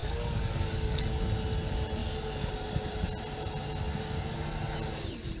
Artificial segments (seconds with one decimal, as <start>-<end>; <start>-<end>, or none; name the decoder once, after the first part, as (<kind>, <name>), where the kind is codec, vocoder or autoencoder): 0.0-1.2 (codec, DAC); 2.0-2.5